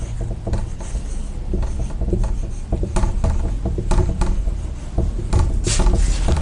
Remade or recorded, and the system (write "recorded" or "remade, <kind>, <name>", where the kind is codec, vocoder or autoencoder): recorded